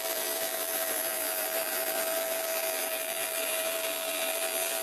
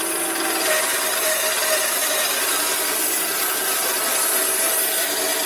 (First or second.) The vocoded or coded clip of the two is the first